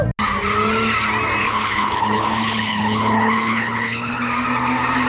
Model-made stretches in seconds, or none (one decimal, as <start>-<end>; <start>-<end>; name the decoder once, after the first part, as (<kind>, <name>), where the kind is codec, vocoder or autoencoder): 1.4-4.1 (codec, HILCodec)